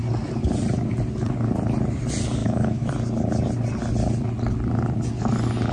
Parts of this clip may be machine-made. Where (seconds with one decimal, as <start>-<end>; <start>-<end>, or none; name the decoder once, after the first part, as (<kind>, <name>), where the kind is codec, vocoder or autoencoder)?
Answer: 2.4-2.9 (autoencoder, DAC-VAE)